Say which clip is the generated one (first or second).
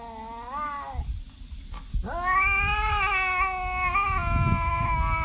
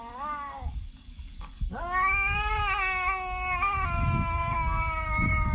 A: second